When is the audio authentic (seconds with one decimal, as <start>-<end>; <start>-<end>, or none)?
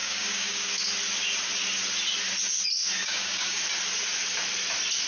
0.7-3.0; 3.6-5.1